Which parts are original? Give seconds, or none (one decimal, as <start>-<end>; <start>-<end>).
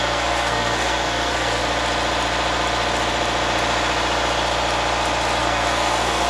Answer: 1.6-5.4